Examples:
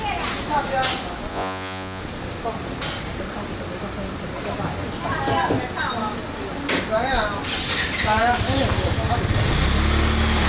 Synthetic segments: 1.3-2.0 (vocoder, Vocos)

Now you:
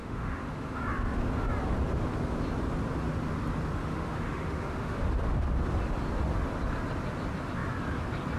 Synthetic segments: 0.0-0.8 (autoencoder, DAC-VAE); 3.8-5.0

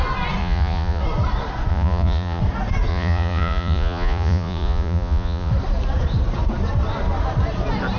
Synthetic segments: 0.4-1.0 (vocoder, Vocos); 1.7-2.4; 2.9-5.5